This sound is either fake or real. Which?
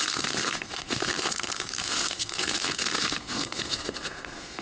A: fake